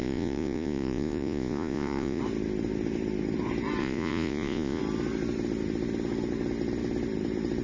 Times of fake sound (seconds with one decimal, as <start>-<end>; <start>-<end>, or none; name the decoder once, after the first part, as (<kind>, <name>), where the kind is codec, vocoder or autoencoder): 0.0-2.2 (vocoder, Vocos); 3.8-4.8